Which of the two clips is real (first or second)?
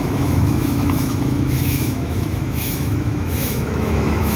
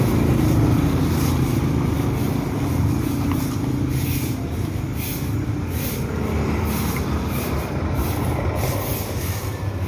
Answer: second